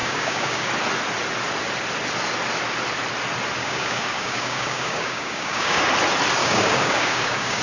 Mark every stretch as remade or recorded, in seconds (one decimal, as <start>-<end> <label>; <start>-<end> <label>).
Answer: 0.0-0.7 remade; 0.7-3.6 recorded; 3.6-5.8 remade; 5.8-6.4 recorded; 6.4-7.6 remade